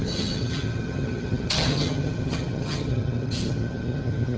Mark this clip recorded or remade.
remade